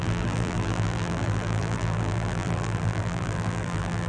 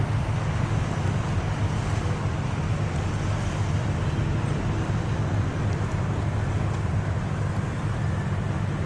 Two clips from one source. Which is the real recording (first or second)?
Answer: second